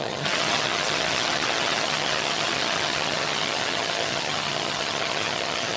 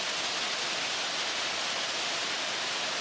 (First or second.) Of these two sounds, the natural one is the second